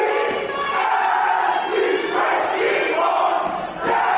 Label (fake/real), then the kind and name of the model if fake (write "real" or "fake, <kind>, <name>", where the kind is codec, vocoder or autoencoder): real